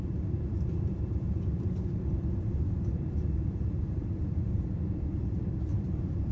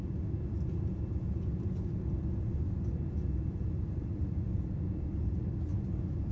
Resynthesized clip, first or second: first